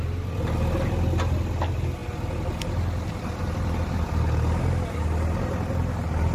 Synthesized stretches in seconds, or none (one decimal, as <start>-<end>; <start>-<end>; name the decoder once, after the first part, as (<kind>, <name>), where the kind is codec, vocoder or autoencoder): none